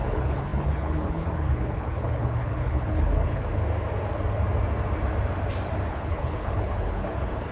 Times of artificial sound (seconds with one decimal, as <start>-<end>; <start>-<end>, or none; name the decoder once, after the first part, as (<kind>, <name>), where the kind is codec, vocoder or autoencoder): 0.0-3.6 (codec, HILCodec); 5.9-7.5